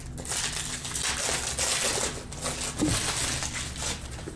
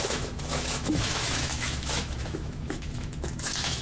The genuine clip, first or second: first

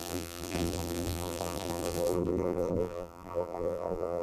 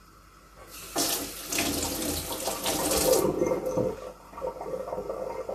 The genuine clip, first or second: second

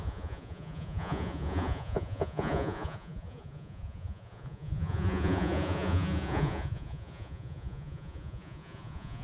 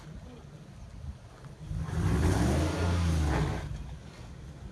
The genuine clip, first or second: second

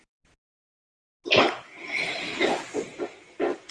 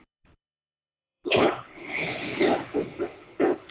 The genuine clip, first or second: first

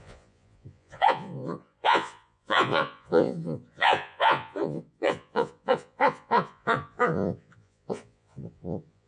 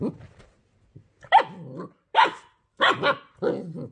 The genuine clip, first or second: second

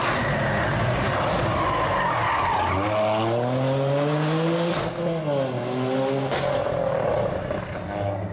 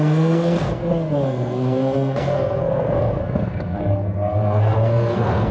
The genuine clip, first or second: first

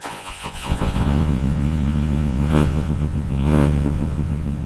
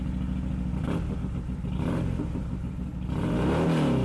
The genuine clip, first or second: second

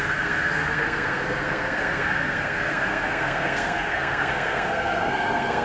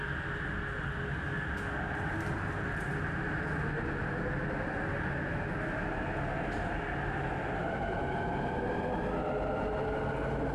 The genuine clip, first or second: second